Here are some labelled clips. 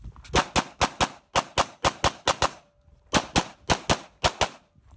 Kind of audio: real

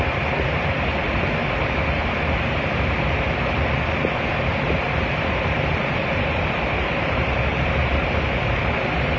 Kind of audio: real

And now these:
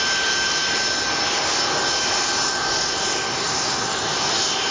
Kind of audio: real